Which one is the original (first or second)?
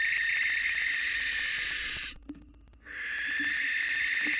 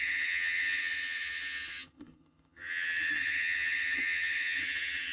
first